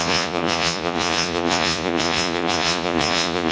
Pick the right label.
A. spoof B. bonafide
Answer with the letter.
A